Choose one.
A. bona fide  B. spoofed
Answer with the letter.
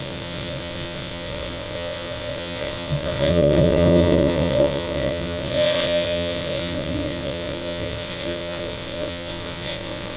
B